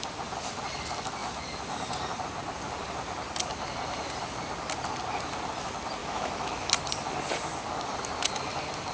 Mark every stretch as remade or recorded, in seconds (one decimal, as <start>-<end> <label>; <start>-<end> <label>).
0.0-6.0 recorded; 6.0-6.7 remade; 6.7-8.9 recorded